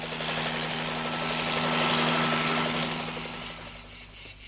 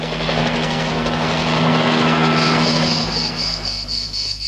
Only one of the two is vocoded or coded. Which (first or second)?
second